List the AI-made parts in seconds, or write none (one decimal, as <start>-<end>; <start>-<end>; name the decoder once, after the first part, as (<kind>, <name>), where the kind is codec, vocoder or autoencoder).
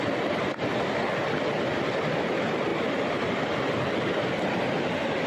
none